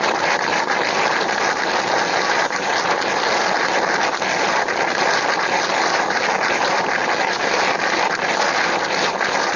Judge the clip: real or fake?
real